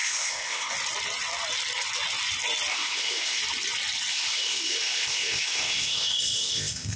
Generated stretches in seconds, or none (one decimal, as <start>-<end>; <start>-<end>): 0.0-0.7; 2.7-3.4; 4.1-7.0